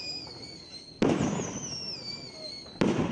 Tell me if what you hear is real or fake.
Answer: real